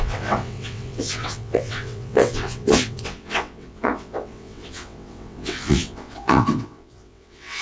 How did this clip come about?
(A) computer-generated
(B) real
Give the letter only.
A